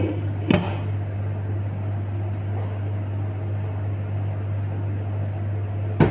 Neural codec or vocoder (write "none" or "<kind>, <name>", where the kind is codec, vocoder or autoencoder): none